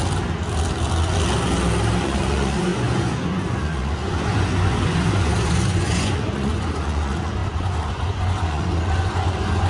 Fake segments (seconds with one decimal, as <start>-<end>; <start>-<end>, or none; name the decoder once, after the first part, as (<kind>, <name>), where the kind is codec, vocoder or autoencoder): 2.0-9.7 (vocoder, Vocos)